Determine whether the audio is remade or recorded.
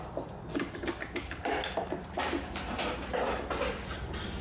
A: recorded